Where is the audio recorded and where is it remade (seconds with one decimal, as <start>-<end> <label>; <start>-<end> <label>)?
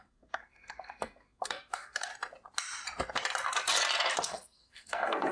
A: 0.0-2.1 remade; 2.1-4.2 recorded; 4.2-5.3 remade